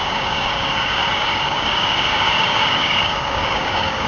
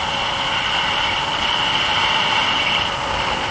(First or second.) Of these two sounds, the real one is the second